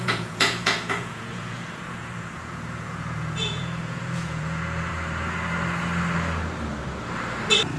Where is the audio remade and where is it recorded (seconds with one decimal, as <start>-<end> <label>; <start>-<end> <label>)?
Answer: 0.0-4.9 remade; 4.9-7.8 recorded